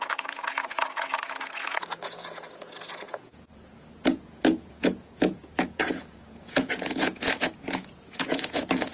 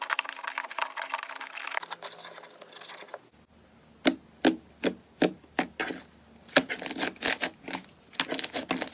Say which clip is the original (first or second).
second